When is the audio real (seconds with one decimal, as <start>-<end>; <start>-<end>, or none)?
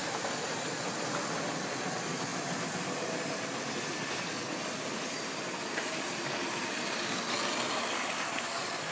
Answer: 0.0-8.9